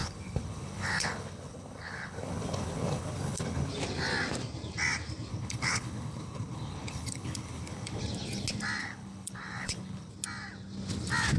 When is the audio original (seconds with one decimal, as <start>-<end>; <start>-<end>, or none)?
3.7-5.3; 8.0-8.8; 10.1-11.4